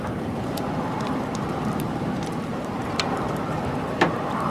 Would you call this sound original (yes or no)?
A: no